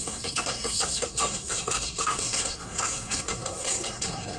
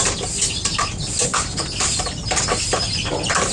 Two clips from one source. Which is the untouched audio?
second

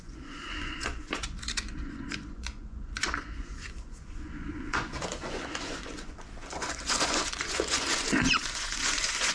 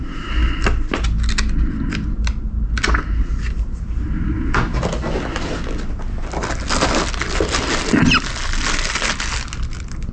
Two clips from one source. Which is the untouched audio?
second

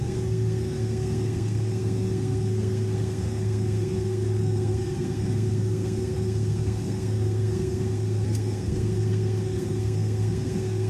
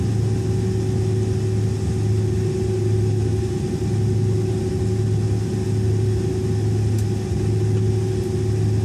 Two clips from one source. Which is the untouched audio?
second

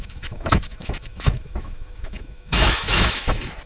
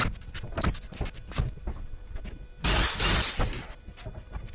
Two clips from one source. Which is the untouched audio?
second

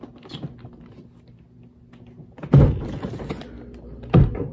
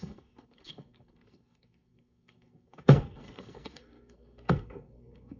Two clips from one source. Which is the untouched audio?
first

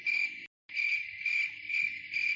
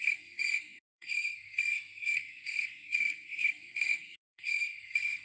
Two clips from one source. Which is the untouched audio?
first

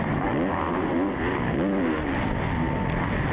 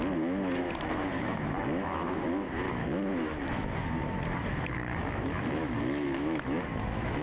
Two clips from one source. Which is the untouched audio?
first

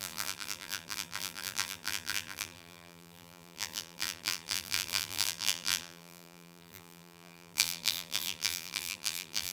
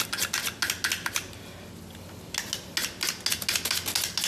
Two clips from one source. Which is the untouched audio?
second